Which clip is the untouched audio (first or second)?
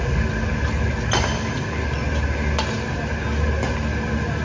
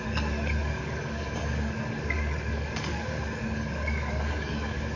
first